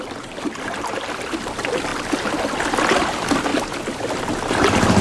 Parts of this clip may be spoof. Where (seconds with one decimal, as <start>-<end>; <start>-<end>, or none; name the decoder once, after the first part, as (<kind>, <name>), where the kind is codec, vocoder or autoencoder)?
none